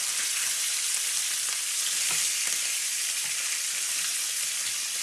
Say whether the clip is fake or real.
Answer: real